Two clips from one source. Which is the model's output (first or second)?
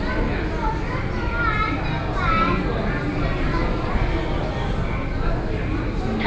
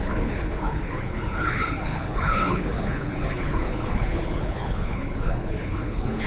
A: second